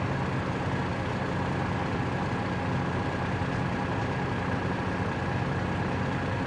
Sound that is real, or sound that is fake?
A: real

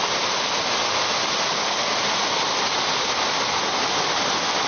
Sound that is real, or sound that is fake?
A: real